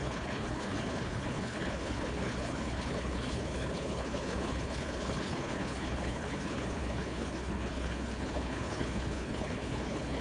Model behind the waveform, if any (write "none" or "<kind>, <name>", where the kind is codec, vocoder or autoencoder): codec, HILCodec